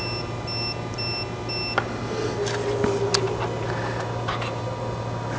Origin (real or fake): real